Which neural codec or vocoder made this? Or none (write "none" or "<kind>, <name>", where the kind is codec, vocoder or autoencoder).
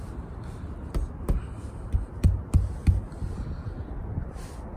none